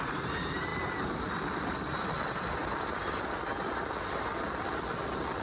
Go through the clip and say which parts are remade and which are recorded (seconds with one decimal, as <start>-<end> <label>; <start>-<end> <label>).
0.0-5.4 recorded